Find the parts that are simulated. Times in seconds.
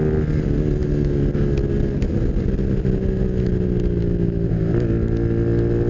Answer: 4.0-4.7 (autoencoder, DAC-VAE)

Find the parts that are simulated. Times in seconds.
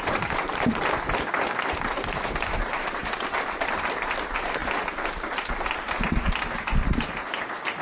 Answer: 0.0-3.0 (vocoder, BigVGAN v2); 3.6-4.6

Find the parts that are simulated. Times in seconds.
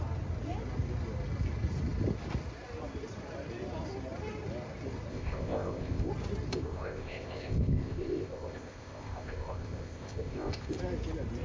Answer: 5.1-6.1 (codec, ZipCodec); 6.5-10.8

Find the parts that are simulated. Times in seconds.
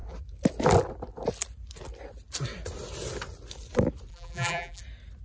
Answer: 4.1-4.8 (vocoder, BigVGAN v2)